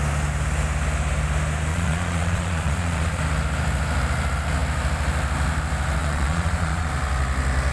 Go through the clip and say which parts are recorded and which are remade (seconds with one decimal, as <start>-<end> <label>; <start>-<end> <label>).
0.0-1.7 recorded; 1.7-3.2 remade; 3.2-6.0 recorded; 6.0-6.9 remade; 6.9-7.7 recorded